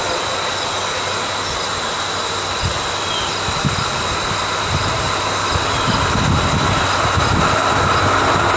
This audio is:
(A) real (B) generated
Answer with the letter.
A